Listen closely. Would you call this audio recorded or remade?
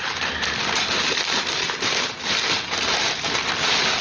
remade